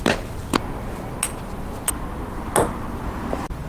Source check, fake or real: real